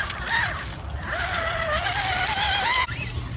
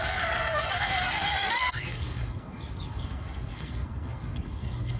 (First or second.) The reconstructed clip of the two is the second